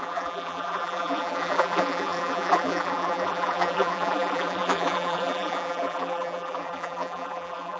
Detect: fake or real fake